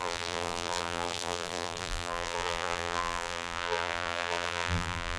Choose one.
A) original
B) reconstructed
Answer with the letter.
B